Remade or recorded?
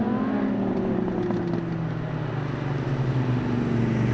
recorded